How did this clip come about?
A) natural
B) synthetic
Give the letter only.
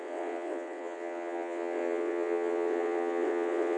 B